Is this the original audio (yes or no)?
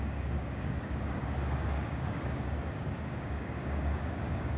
no